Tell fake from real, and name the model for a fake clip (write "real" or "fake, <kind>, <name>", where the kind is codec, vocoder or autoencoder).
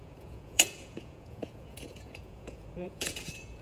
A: fake, vocoder, Vocos